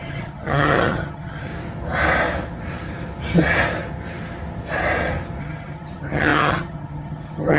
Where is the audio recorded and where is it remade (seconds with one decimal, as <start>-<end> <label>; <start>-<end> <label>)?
0.0-1.5 remade; 1.5-5.4 recorded; 5.4-7.6 remade